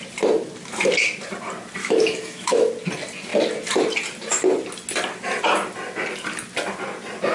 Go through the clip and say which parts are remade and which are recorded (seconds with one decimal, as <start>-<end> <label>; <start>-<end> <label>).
0.0-1.8 recorded; 1.8-2.7 remade; 2.7-7.3 recorded